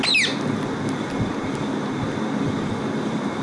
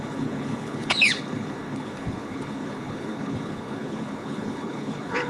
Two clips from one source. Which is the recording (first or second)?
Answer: first